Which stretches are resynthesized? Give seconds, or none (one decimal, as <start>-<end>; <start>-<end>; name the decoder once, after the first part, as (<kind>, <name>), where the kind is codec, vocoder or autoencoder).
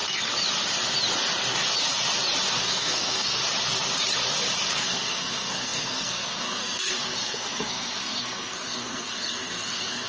2.6-3.4 (codec, SNAC); 4.8-10.1